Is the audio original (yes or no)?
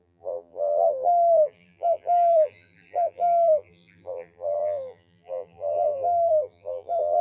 no